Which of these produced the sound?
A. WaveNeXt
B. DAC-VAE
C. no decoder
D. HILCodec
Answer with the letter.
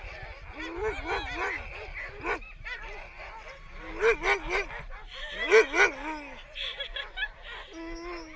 C